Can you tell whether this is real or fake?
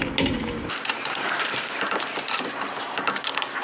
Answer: real